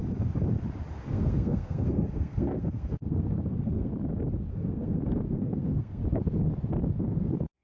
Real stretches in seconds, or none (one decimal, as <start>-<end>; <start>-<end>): 0.0-1.0; 3.9-4.5; 6.0-7.0